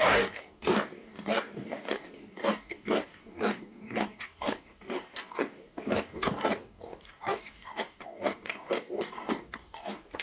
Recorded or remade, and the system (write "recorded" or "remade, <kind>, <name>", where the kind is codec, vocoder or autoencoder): remade, codec, DAC